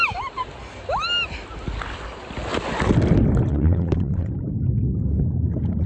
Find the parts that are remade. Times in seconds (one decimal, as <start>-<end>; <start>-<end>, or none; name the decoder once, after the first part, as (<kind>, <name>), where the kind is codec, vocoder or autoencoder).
3.5-4.3 (vocoder, Vocos)